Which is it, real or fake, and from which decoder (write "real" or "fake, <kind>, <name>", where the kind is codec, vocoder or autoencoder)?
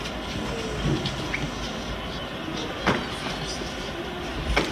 real